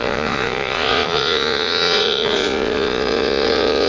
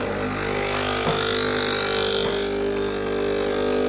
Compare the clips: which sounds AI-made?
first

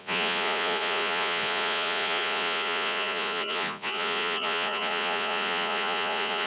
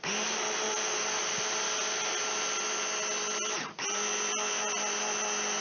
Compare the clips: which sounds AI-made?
first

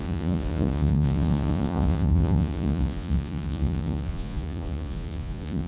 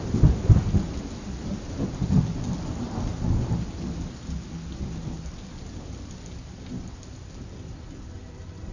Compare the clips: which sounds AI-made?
first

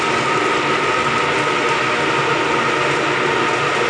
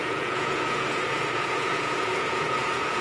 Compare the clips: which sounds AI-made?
second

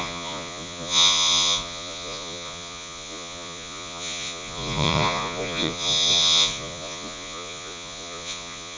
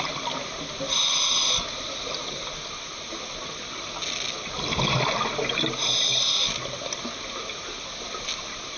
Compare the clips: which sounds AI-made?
first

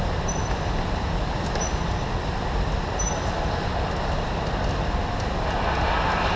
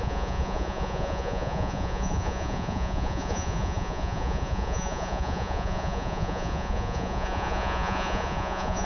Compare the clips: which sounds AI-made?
second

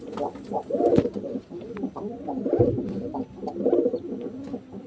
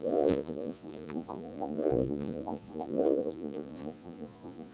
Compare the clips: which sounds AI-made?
second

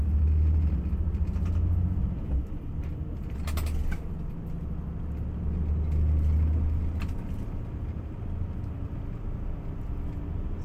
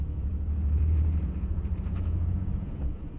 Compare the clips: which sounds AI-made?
second